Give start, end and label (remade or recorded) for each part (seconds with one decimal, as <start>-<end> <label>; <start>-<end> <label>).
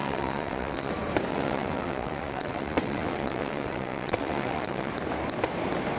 0.0-0.9 remade; 0.9-1.3 recorded; 1.3-4.9 remade; 4.9-6.0 recorded